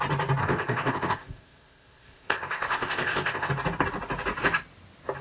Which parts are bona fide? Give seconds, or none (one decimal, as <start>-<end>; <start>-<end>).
0.0-0.4; 3.5-5.2